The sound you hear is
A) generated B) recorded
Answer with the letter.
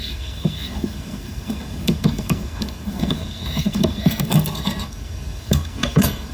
A